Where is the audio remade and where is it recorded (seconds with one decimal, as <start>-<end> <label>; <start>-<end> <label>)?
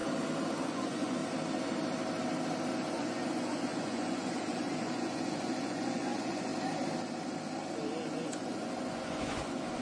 0.0-0.6 recorded; 0.6-1.2 remade; 1.2-2.7 recorded; 2.7-6.5 remade; 6.5-8.1 recorded; 8.1-9.8 remade